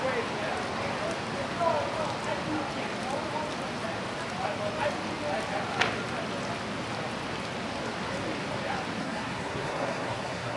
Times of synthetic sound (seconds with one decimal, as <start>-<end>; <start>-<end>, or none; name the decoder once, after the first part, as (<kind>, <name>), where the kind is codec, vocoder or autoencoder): 9.0-10.6 (codec, SNAC)